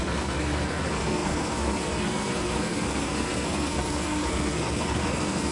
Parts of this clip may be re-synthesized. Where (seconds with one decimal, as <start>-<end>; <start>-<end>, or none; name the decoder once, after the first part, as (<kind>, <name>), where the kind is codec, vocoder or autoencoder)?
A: 0.0-5.5 (codec, SNAC)